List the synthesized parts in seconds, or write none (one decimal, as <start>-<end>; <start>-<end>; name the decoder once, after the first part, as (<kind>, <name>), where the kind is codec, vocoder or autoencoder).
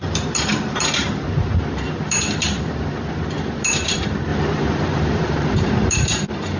0.0-6.6 (vocoder, BigVGAN v2)